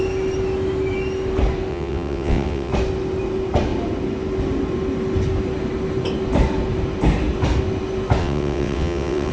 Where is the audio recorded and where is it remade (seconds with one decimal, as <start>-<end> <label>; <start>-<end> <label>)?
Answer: 0.0-1.7 recorded; 1.7-2.7 remade; 2.7-8.2 recorded; 8.2-9.3 remade